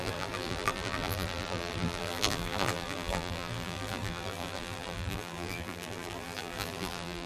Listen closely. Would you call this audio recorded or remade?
remade